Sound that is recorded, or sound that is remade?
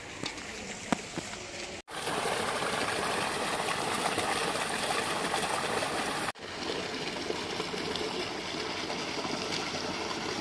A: recorded